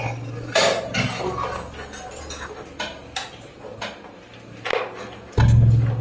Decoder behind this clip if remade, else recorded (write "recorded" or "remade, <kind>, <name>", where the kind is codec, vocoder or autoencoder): recorded